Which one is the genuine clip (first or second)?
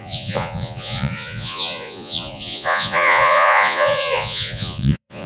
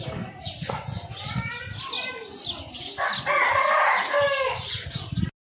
second